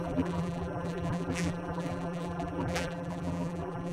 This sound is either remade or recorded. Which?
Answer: remade